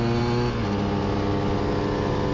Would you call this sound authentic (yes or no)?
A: yes